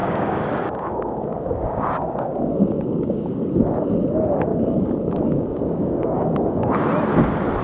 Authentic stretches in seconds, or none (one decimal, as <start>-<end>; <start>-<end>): 3.5-4.5; 6.7-7.6